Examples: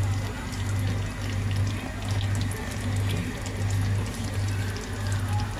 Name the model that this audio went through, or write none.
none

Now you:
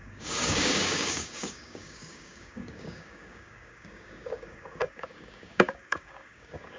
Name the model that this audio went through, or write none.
codec, DAC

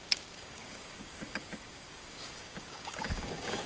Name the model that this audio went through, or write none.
codec, DAC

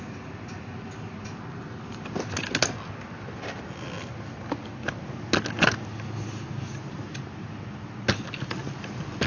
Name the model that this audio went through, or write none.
none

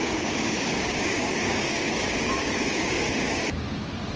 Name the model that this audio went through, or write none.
codec, DAC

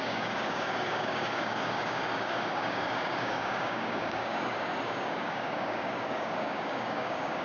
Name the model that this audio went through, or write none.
codec, DAC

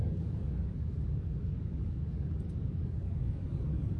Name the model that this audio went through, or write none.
codec, DAC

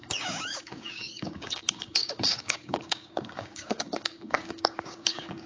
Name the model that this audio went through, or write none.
codec, DAC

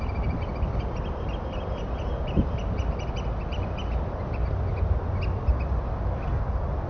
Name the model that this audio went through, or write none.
none